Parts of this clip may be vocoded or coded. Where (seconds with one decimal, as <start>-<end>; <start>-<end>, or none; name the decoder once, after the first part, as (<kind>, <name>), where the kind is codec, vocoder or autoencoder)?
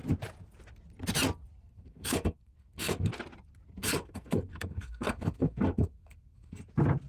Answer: 1.6-3.1 (codec, SNAC); 3.8-6.6